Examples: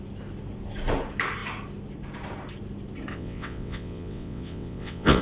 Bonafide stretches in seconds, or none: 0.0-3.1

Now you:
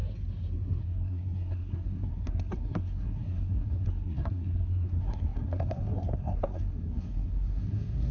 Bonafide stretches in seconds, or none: 0.0-0.8

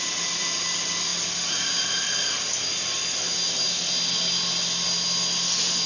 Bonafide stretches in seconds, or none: 0.0-5.9

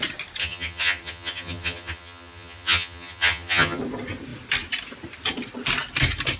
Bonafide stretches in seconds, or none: 0.0-0.4; 3.8-6.4